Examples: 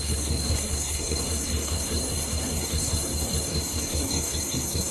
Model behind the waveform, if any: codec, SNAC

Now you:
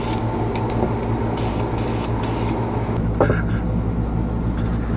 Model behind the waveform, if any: none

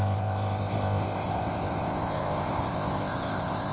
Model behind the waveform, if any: codec, ZipCodec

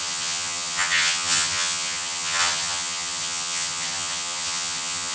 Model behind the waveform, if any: vocoder, HiFi-GAN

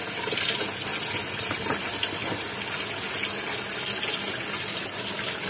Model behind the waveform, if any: none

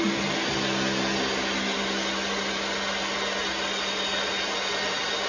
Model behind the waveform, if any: none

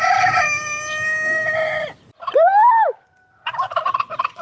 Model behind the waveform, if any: none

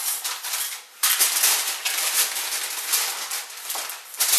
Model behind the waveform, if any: none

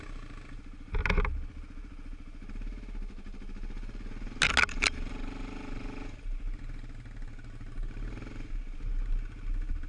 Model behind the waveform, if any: none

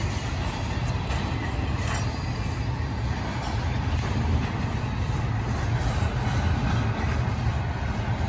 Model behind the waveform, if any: none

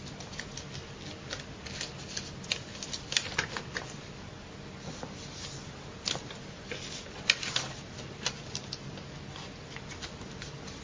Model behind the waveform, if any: none